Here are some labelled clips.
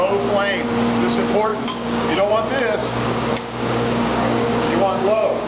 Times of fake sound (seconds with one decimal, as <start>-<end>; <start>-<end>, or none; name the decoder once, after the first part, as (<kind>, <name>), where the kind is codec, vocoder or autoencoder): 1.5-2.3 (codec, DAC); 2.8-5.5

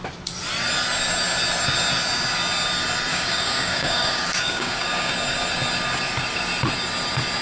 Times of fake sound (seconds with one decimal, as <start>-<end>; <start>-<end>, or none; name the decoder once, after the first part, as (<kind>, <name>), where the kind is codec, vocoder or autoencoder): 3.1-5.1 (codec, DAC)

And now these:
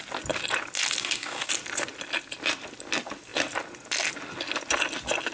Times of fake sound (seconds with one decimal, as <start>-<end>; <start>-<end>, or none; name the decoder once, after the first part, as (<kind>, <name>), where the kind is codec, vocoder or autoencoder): 1.0-1.5 (codec, DAC)

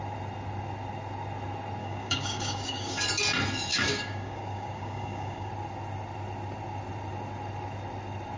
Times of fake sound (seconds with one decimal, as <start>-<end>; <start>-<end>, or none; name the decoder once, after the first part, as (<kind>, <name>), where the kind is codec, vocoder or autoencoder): 1.8-3.0 (codec, DAC); 3.7-5.5